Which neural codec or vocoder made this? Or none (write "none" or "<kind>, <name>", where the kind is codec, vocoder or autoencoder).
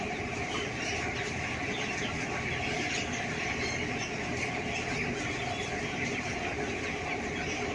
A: none